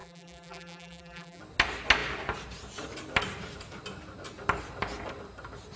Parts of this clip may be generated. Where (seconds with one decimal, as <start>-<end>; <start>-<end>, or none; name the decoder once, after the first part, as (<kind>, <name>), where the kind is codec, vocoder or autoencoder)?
0.0-1.4 (vocoder, BigVGAN v2)